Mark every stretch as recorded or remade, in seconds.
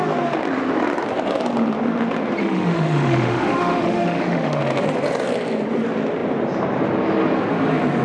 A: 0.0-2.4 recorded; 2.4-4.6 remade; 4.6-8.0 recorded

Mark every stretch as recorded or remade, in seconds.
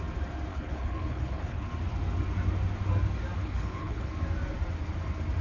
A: 0.0-0.5 recorded; 0.5-1.7 remade; 1.7-3.4 recorded; 3.4-4.1 remade; 4.1-5.4 recorded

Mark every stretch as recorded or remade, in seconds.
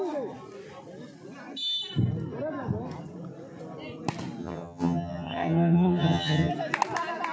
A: 0.0-4.4 recorded; 4.4-6.5 remade; 6.5-7.3 recorded